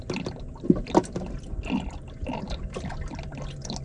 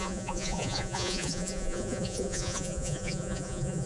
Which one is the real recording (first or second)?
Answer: first